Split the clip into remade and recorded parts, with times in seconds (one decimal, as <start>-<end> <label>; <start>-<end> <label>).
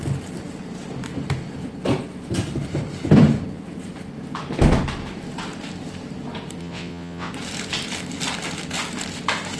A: 0.0-6.6 recorded; 6.6-7.3 remade; 7.3-9.6 recorded